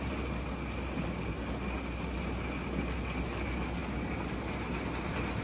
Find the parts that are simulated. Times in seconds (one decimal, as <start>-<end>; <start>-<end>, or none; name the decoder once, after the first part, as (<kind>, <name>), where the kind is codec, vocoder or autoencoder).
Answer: none